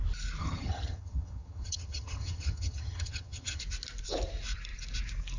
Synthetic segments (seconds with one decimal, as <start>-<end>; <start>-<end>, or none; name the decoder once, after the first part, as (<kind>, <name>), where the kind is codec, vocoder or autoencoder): 0.4-3.6 (vocoder, HiFi-GAN)